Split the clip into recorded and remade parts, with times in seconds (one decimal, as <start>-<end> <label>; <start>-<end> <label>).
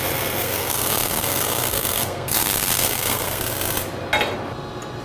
0.0-0.4 recorded; 0.4-3.4 remade; 3.4-5.0 recorded